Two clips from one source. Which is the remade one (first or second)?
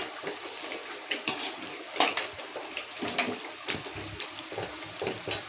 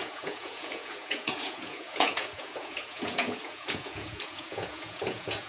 second